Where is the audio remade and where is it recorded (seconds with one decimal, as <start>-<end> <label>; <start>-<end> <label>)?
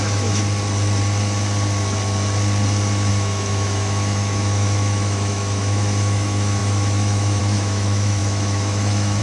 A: 0.0-0.4 remade; 0.4-3.1 recorded; 3.1-9.2 remade